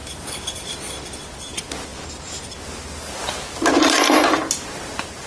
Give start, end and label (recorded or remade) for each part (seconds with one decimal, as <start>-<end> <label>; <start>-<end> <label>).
0.0-5.3 recorded